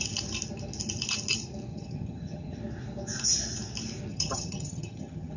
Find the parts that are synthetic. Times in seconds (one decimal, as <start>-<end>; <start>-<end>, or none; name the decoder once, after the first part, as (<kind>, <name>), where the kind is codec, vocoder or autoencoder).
1.7-2.6 (vocoder, HiFi-GAN); 4.1-5.4